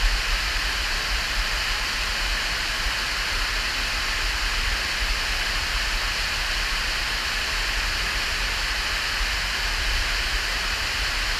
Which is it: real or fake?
real